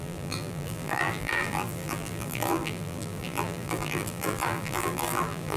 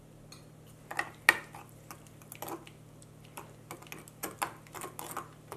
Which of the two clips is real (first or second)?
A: second